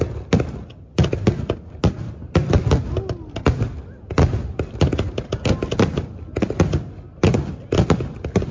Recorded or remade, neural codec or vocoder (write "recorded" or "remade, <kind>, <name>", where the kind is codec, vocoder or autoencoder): recorded